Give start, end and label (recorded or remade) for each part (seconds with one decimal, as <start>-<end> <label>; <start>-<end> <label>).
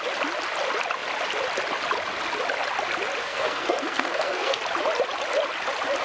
0.0-3.2 recorded; 3.2-4.6 remade; 4.6-6.0 recorded